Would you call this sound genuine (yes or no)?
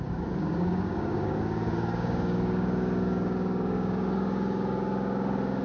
no